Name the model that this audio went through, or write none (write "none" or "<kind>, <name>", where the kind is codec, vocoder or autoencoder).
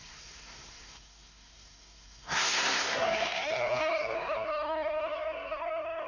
codec, SNAC